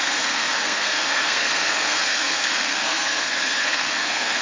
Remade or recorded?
remade